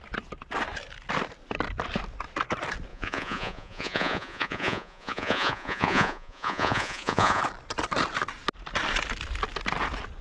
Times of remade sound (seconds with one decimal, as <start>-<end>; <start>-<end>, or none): 2.9-7.4